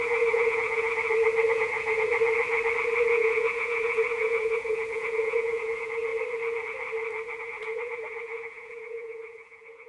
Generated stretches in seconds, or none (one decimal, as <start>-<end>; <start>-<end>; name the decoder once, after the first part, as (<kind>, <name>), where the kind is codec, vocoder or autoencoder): 0.0-1.0 (vocoder, Vocos); 1.5-2.1; 3.0-6.1; 7.4-9.9